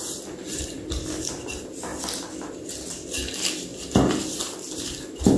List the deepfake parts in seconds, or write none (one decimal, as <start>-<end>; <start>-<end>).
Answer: 0.4-1.3; 1.9-2.5